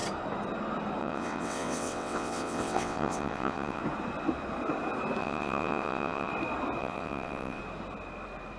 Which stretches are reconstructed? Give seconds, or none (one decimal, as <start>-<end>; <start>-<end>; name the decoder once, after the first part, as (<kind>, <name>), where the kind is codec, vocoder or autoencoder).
1.0-3.8 (vocoder, WaveNeXt); 5.2-6.3; 6.8-7.6